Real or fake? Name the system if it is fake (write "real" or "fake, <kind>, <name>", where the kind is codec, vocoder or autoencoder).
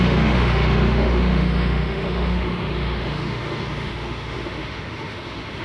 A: fake, autoencoder, DAC-VAE